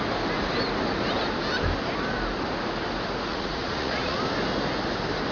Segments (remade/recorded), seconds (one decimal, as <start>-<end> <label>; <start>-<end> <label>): 0.0-3.3 recorded; 3.3-4.2 remade; 4.2-5.3 recorded